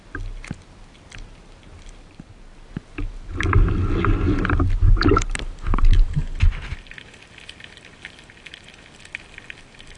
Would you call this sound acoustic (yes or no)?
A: yes